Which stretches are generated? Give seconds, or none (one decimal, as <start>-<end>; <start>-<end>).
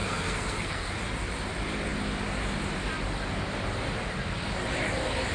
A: 0.0-0.9